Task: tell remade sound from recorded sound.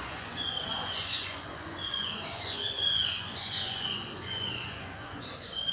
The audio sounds remade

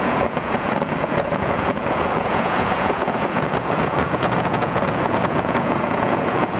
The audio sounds remade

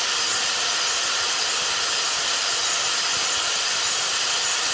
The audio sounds recorded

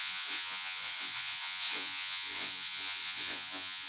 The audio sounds remade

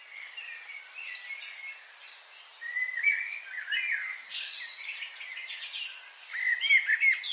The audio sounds recorded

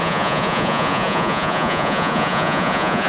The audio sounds remade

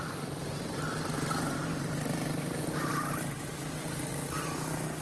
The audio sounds recorded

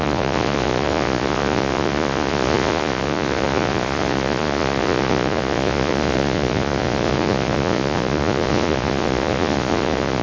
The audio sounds remade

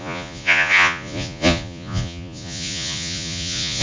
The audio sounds remade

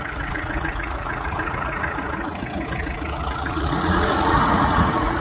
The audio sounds remade